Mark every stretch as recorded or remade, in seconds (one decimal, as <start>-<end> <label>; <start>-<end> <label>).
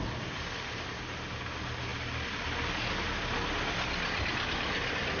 0.0-5.2 recorded